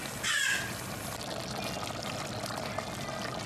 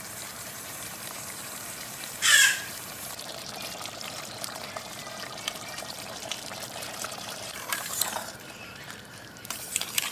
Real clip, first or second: first